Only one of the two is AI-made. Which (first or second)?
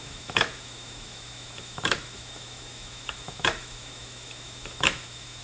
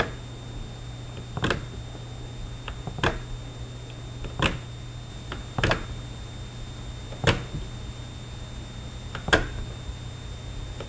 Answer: first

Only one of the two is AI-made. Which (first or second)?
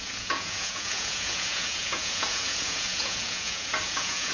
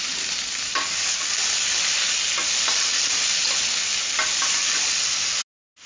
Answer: first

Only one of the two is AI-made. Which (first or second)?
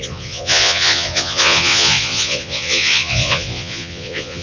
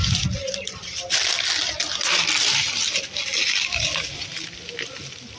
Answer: first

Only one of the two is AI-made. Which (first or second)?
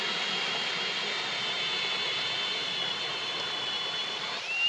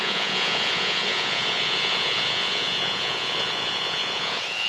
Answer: second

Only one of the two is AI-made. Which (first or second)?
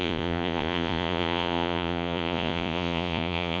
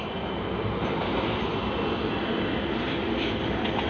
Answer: first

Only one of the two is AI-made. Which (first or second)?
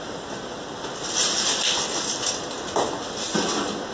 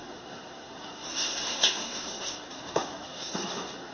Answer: second